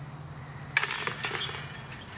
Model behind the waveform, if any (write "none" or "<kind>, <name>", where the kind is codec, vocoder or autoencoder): none